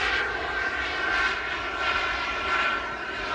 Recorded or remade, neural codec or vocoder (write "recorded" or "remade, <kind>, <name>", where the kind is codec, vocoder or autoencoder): recorded